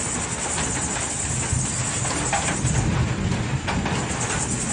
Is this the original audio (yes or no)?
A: yes